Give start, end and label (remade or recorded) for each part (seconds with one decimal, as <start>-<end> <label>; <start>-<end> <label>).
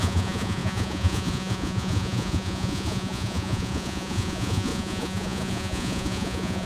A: 0.0-6.7 remade